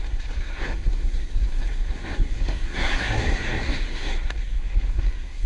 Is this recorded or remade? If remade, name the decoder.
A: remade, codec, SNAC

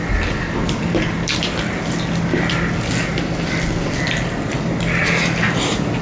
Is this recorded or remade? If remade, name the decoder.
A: recorded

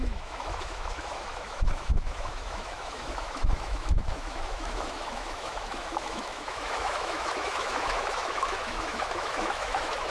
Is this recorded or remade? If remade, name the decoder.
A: remade, autoencoder, DAC-VAE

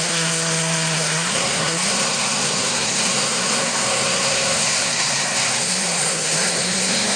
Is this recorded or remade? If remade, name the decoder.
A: remade, codec, SNAC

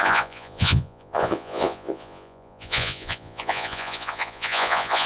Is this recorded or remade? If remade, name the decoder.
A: remade, vocoder, Vocos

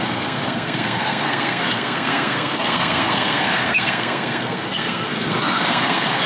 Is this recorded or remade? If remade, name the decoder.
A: remade, codec, SNAC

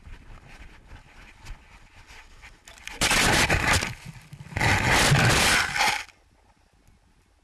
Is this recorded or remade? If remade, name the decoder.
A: recorded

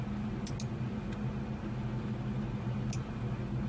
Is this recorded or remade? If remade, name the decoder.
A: recorded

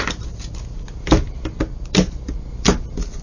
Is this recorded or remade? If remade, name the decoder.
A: recorded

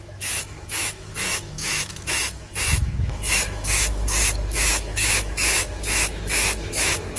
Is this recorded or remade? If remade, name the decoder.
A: remade, autoencoder, DAC-VAE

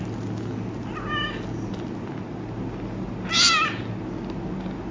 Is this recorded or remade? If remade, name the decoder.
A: recorded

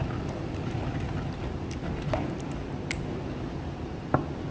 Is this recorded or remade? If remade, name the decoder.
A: recorded